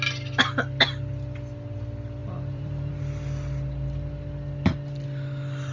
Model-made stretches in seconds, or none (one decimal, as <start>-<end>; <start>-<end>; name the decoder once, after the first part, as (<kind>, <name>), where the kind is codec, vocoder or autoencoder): 2.2-2.9 (vocoder, BigVGAN v2)